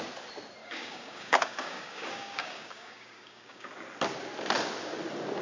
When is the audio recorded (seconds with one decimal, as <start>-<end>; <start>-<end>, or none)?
0.0-0.6; 3.7-5.4